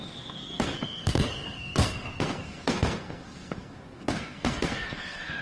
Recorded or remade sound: remade